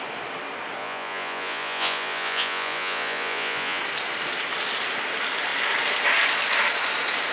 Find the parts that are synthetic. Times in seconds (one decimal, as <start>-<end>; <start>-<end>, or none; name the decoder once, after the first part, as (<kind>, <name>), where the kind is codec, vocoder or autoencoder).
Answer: 0.8-3.8 (vocoder, Vocos)